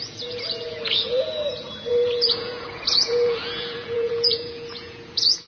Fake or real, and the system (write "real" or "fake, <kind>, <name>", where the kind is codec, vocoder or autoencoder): fake, vocoder, Vocos